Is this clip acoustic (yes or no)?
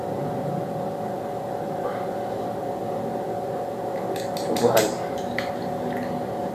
yes